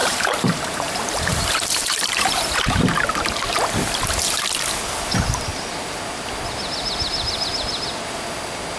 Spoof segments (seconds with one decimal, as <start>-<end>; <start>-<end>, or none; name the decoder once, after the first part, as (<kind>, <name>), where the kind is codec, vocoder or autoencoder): 0.0-2.3 (vocoder, BigVGAN v2)